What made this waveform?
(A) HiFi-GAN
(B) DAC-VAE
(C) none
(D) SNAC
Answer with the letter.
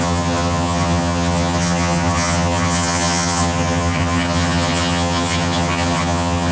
A